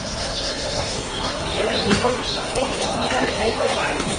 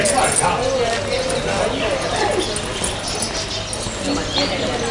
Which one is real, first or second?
second